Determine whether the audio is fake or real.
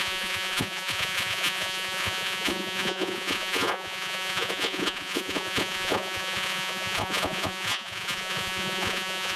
fake